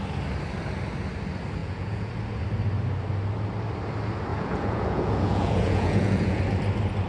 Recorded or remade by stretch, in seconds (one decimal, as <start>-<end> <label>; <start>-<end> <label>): 0.0-1.6 recorded; 1.6-2.1 remade; 2.1-4.3 recorded; 4.3-6.4 remade; 6.4-7.1 recorded